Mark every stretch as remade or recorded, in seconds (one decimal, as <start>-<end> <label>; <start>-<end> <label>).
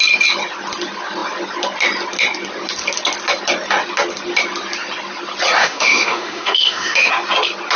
0.0-5.6 recorded; 5.6-7.1 remade; 7.1-7.8 recorded